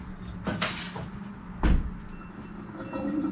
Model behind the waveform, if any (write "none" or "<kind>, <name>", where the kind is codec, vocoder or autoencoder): none